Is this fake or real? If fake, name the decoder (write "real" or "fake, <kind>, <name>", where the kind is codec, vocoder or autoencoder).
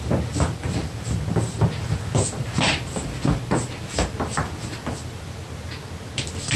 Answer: real